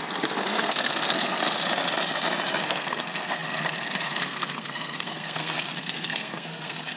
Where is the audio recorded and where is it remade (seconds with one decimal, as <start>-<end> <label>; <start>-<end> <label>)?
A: 0.0-1.4 remade; 1.4-2.6 recorded; 2.6-7.0 remade